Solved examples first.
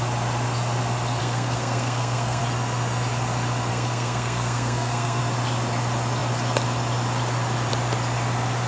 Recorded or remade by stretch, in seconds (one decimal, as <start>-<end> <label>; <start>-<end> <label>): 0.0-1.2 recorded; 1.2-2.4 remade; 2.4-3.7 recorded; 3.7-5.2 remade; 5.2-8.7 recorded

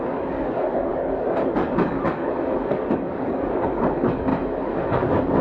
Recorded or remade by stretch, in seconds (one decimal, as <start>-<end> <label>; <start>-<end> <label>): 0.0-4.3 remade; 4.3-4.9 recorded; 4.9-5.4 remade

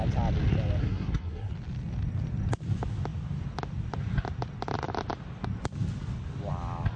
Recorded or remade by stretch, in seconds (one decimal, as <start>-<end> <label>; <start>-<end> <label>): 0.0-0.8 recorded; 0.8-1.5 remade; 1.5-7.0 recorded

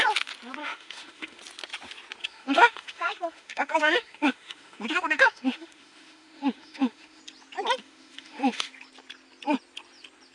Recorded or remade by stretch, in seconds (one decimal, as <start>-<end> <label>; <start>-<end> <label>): 0.0-0.6 recorded; 0.6-1.4 remade; 1.4-2.2 recorded; 2.2-7.2 remade; 7.2-7.8 recorded; 7.8-8.7 remade; 8.7-10.3 recorded